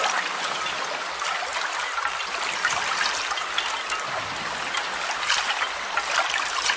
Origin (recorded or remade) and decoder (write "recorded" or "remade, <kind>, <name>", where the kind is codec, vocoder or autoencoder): recorded